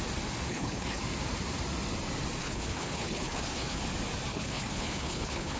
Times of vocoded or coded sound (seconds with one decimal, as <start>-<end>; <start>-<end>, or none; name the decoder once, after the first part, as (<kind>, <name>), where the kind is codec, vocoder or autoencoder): 0.5-1.0 (codec, HILCodec); 2.4-3.8; 4.3-5.6